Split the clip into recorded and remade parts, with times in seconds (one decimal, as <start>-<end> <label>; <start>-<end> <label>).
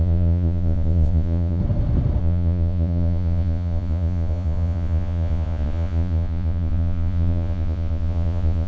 0.0-1.6 remade; 1.6-2.2 recorded; 2.2-8.7 remade